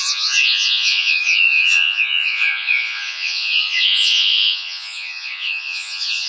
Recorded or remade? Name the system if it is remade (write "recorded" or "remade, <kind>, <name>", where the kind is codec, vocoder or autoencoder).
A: remade, vocoder, Vocos